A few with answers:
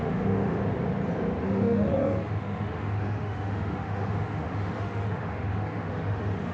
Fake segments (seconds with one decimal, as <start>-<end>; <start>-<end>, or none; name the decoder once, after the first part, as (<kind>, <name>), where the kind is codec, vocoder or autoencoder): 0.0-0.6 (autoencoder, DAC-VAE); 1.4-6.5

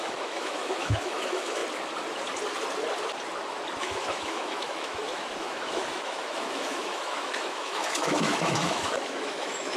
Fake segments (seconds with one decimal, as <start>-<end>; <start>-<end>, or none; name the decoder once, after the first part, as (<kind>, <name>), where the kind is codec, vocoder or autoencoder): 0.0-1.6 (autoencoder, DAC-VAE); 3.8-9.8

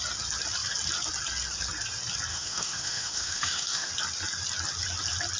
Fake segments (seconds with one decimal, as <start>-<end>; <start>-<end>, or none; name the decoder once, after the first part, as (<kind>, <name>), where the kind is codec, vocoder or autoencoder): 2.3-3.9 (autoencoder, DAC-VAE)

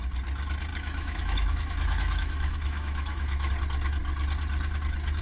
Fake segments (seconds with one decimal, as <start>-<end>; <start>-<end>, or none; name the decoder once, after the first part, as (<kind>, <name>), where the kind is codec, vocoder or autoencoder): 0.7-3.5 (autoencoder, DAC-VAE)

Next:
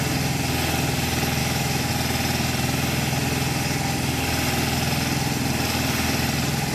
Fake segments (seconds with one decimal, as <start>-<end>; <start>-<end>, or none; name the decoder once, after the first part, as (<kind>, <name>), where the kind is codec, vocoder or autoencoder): 1.4-1.9 (autoencoder, DAC-VAE)

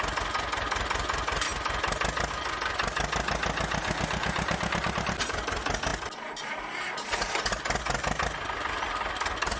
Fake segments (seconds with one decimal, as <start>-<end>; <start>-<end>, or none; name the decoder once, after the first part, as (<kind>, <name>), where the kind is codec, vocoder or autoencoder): none

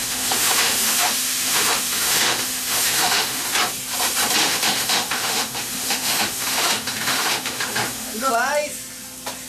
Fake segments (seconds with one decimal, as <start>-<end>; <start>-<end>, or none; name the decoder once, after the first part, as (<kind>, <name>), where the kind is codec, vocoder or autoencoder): 0.0-3.4 (autoencoder, DAC-VAE); 4.4-8.3